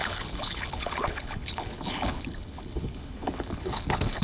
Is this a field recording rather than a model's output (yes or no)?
no